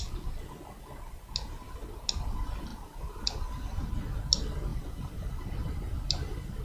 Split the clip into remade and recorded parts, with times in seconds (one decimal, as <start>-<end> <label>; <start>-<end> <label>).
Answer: 0.0-2.7 recorded; 2.7-3.9 remade; 3.9-4.7 recorded; 4.7-5.3 remade; 5.3-6.6 recorded